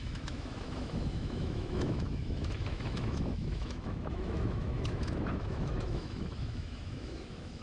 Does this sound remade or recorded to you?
remade